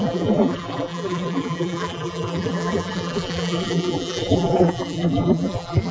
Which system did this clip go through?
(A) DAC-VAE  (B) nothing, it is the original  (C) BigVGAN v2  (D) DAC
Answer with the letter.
C